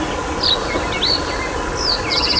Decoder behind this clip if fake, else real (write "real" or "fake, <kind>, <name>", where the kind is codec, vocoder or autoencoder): real